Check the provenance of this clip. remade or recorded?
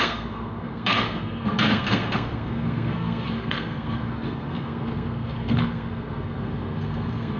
remade